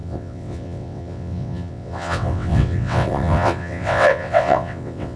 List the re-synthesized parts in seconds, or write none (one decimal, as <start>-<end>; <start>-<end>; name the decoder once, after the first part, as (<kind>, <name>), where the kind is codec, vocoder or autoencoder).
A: 0.0-5.2 (vocoder, WaveNeXt)